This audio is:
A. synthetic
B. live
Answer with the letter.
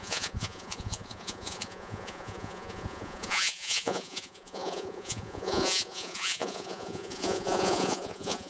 A